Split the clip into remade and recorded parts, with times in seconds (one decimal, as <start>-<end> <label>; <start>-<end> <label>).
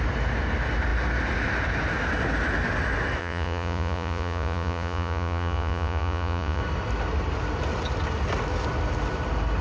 0.0-3.2 recorded; 3.2-6.6 remade; 6.6-9.6 recorded